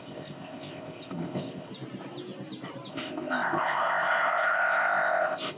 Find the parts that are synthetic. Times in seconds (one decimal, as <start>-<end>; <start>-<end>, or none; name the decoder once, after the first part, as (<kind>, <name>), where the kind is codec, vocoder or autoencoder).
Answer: 0.0-1.7 (codec, ZipCodec); 2.9-5.6